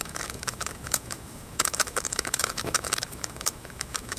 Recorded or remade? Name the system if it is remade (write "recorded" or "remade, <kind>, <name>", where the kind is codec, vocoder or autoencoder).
remade, autoencoder, DAC-VAE